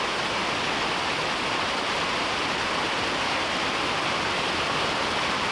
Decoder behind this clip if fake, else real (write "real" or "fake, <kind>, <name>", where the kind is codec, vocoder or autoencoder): real